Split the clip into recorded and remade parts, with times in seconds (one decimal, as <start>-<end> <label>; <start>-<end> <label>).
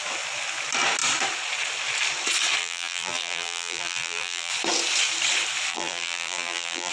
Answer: 0.0-2.6 recorded; 2.6-4.5 remade; 4.5-5.7 recorded; 5.7-6.9 remade